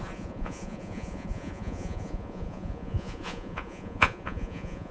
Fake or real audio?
fake